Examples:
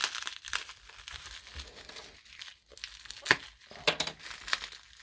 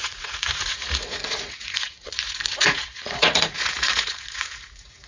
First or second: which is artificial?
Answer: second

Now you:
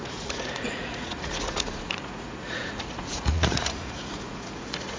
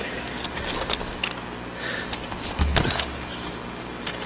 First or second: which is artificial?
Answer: first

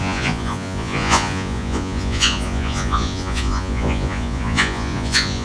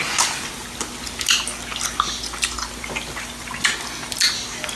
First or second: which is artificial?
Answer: first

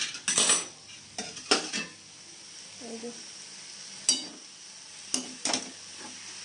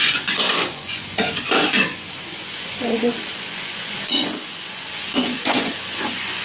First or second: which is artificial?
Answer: second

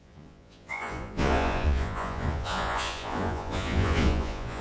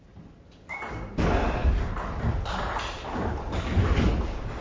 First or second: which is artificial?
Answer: first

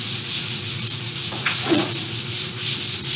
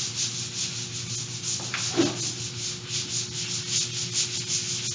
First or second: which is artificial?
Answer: first